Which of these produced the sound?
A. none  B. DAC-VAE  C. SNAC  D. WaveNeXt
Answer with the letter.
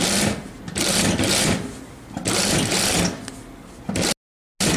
A